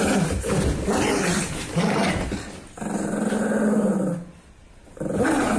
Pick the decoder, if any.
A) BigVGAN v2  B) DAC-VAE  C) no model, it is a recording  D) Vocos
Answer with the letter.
C